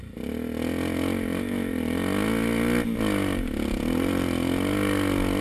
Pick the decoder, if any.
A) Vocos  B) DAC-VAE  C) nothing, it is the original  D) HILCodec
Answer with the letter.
C